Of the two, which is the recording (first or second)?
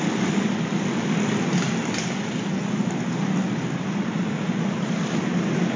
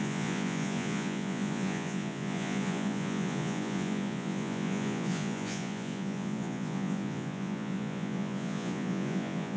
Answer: first